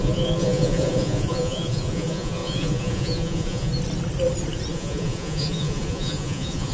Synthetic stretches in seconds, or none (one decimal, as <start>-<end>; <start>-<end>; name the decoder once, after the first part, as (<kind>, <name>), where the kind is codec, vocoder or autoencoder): 0.0-3.7 (vocoder, Vocos); 4.7-6.7